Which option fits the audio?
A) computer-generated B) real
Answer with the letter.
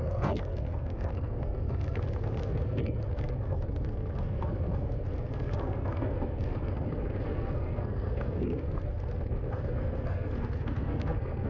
A